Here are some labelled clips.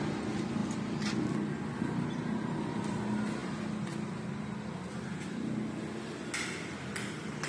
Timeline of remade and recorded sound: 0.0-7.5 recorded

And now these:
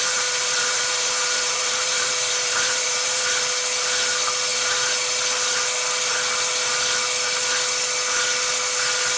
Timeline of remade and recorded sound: 0.0-3.3 remade; 3.3-9.2 recorded

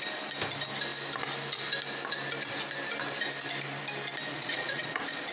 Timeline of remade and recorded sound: 0.0-4.3 recorded; 4.3-5.3 remade

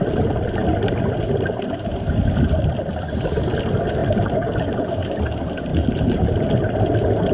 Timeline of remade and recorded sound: 0.0-4.0 recorded; 4.0-4.8 remade; 4.8-5.7 recorded; 5.7-6.4 remade; 6.4-7.3 recorded

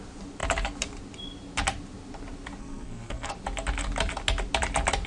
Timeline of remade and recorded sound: 0.0-2.6 recorded; 2.6-3.3 remade; 3.3-5.1 recorded

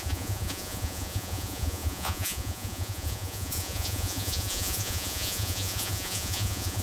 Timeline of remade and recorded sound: 0.0-6.8 remade